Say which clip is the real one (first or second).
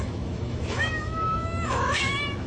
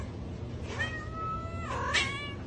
second